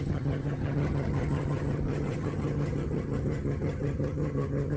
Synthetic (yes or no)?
yes